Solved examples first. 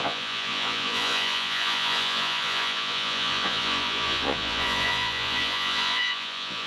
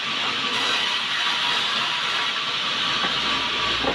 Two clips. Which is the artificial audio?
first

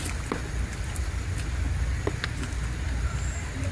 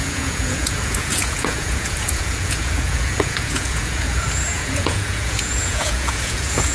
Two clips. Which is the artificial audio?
second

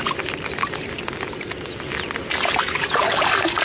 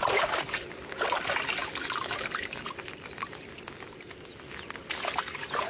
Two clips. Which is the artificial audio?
first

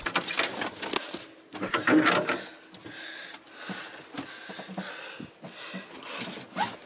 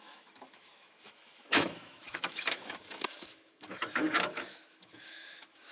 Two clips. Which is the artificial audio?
second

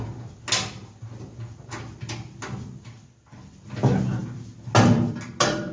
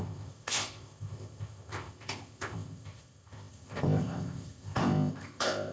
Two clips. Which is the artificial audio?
second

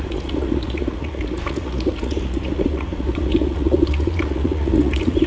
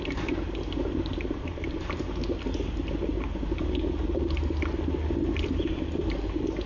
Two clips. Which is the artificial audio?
first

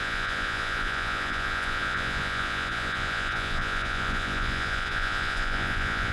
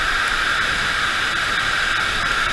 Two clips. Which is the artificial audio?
first